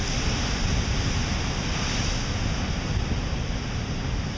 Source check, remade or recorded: recorded